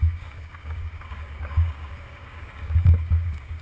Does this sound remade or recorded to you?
remade